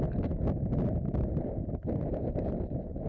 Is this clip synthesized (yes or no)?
no